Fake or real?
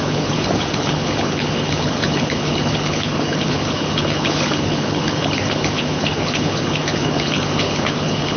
fake